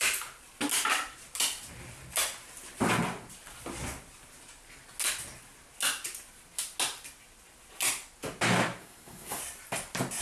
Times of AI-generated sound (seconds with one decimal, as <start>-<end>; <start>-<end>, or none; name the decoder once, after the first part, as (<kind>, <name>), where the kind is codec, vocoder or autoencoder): 8.8-9.4 (codec, SNAC)